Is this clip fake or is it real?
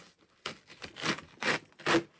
real